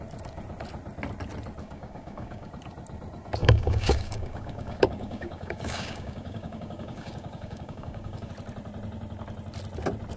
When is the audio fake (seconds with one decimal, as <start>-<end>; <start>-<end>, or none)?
1.6-2.5; 3.4-8.3